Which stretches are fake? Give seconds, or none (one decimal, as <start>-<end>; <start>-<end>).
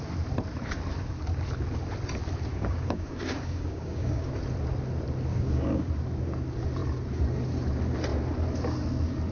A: 2.5-4.3; 5.3-5.9